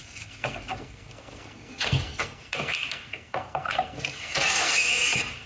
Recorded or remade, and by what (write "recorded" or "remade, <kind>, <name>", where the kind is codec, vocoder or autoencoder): remade, codec, SNAC